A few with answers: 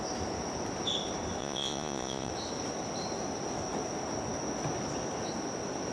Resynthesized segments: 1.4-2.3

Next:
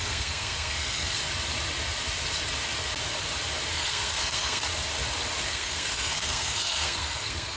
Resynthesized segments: 0.0-1.2; 3.7-4.6; 5.5-7.6

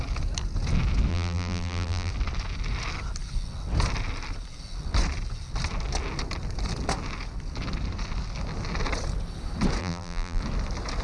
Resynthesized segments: 1.1-2.1; 9.8-10.4

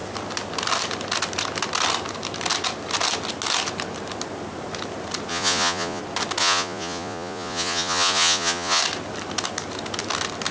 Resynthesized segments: 5.3-6.0; 6.4-8.8

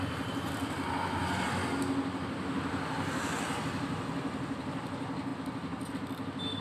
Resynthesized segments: none

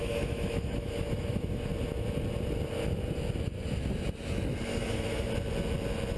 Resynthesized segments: 0.0-1.7; 4.7-5.3